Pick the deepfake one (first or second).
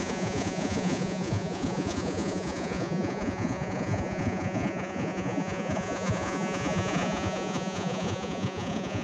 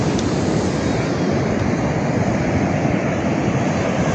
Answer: first